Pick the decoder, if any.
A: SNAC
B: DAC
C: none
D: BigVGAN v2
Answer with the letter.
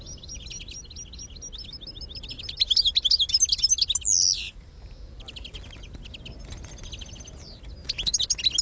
C